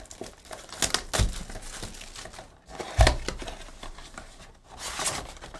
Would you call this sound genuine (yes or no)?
yes